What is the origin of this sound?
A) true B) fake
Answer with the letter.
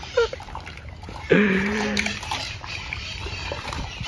B